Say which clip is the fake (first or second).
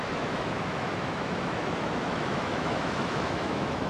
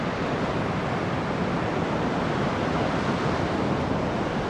first